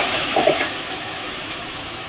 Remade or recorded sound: remade